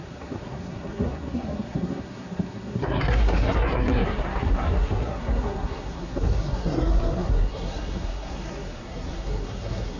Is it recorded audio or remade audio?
remade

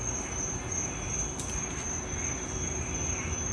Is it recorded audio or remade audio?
recorded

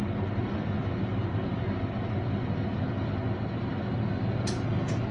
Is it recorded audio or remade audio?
recorded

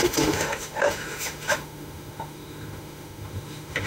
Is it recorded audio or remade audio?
remade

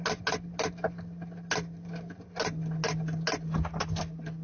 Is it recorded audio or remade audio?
recorded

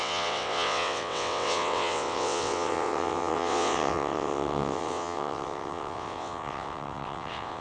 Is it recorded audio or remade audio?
remade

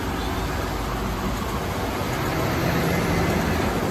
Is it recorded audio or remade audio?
recorded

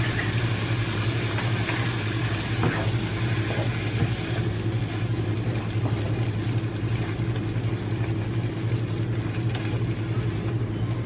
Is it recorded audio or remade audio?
recorded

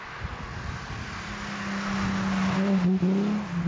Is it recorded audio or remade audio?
recorded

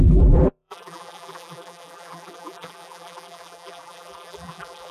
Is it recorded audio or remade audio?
remade